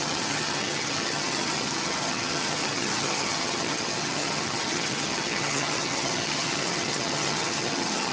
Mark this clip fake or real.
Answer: fake